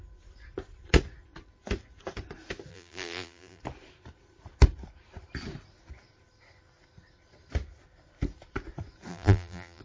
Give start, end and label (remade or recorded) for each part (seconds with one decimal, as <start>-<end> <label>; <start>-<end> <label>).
0.0-2.7 recorded; 2.7-3.6 remade; 3.6-9.1 recorded; 9.1-9.8 remade